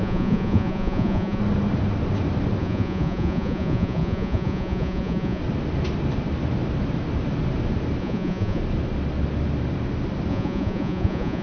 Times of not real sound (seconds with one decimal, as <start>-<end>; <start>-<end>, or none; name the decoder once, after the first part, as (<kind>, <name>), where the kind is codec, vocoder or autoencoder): 0.0-1.4 (vocoder, Vocos); 2.6-5.4; 8.0-8.6; 10.3-11.4